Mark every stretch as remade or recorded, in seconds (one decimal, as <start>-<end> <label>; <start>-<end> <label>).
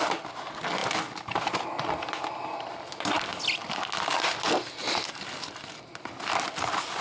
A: 0.0-7.0 recorded